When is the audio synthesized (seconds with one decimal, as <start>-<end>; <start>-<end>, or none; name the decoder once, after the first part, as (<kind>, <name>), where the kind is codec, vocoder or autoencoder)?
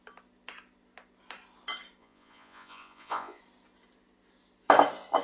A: 2.0-3.4 (vocoder, Vocos)